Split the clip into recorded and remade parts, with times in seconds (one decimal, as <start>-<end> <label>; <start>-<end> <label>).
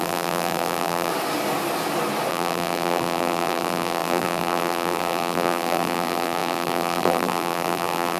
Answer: 0.0-1.1 remade; 1.1-2.3 recorded; 2.3-8.2 remade